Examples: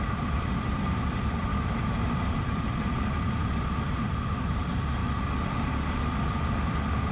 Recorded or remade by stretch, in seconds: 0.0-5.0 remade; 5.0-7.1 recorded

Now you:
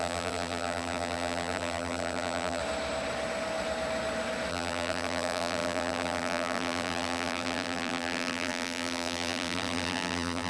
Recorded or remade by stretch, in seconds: 0.0-2.6 remade; 2.6-4.5 recorded; 4.5-10.5 remade

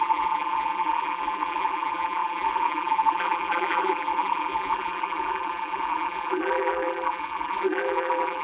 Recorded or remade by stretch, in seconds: 0.0-8.4 remade